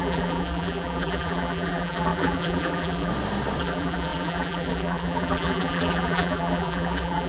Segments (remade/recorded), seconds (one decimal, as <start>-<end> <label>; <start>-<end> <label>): 0.0-3.1 remade; 3.1-3.6 recorded; 3.6-7.3 remade